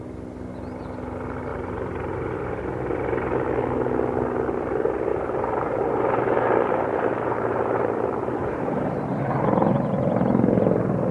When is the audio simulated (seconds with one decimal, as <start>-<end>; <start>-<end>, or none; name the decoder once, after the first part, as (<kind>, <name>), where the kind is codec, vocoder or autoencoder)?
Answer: 1.5-2.6 (vocoder, BigVGAN v2); 5.1-9.3